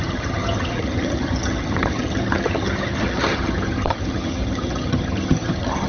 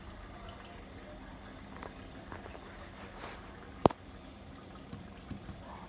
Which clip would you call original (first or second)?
second